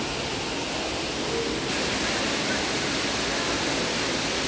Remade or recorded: recorded